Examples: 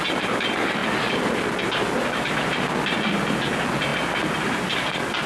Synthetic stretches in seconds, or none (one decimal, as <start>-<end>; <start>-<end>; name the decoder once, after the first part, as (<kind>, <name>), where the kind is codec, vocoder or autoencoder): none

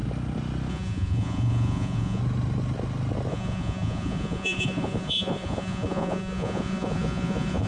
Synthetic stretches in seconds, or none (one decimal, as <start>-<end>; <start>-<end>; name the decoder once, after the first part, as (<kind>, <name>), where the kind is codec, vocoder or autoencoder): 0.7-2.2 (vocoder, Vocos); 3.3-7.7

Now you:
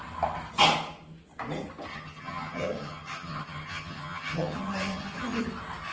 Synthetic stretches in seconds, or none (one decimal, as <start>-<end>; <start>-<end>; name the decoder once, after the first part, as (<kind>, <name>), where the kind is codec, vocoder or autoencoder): 1.9-5.4 (vocoder, HiFi-GAN)

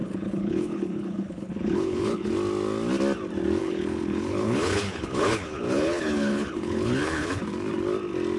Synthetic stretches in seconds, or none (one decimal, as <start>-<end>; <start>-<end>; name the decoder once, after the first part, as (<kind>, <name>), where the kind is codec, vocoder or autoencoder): 0.0-2.3 (codec, HILCodec); 3.6-7.4

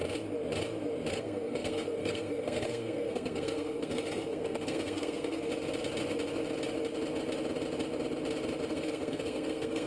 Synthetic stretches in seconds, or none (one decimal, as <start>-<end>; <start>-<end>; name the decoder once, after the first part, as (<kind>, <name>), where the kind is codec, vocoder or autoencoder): 1.1-5.5 (codec, SNAC); 8.7-9.9

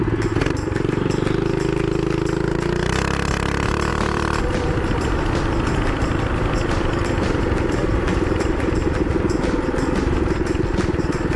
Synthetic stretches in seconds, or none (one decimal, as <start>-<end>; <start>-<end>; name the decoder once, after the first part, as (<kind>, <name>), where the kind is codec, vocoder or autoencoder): 3.9-5.4 (vocoder, BigVGAN v2); 7.8-9.4

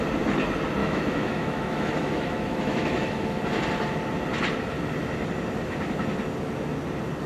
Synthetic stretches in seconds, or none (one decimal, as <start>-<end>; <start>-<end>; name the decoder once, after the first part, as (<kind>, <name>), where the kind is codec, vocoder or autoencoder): 0.8-3.4 (autoencoder, DAC-VAE)

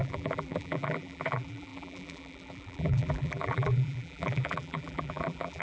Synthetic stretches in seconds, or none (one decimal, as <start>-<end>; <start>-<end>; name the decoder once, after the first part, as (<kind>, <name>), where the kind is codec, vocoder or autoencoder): 0.0-5.6 (vocoder, BigVGAN v2)